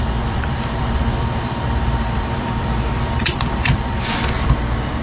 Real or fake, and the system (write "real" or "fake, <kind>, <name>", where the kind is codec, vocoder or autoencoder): fake, vocoder, BigVGAN v2